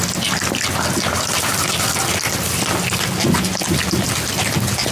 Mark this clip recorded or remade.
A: recorded